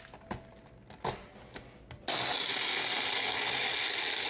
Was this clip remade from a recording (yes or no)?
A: no